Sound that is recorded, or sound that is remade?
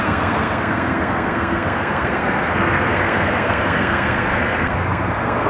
remade